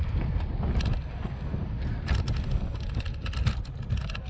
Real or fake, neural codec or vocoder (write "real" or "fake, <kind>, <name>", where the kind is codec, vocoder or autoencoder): real